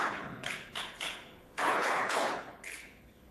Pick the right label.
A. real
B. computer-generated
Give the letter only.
B